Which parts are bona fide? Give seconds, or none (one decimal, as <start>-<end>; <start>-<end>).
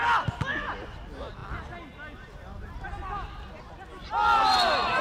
0.0-5.0